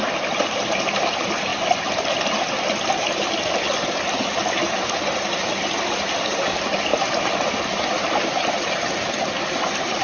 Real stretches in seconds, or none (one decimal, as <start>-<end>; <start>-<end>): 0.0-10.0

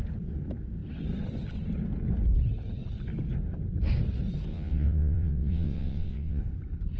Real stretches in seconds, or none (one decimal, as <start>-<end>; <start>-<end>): 0.0-4.5; 6.4-7.0

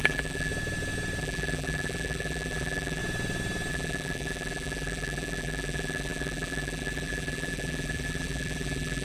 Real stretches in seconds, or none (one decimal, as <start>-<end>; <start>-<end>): 0.5-1.2; 3.0-3.7